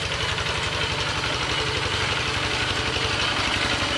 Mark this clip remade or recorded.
recorded